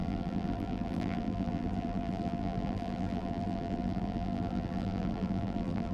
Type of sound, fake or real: fake